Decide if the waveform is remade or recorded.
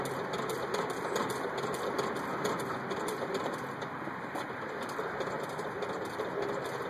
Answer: recorded